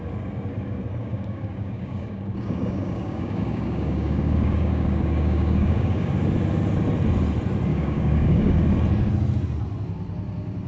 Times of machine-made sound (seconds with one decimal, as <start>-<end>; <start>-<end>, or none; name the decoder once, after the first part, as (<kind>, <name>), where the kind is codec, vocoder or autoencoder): 1.0-6.1 (codec, DAC); 7.7-8.6